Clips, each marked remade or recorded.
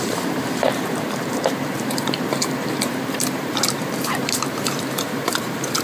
remade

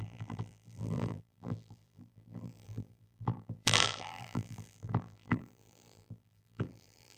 remade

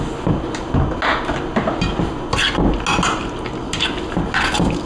recorded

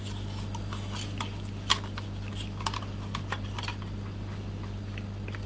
recorded